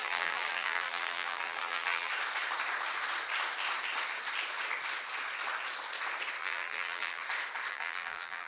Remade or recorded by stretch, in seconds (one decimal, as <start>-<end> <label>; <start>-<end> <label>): 0.0-2.1 remade; 2.1-6.4 recorded; 6.4-7.2 remade; 7.2-7.7 recorded; 7.7-8.5 remade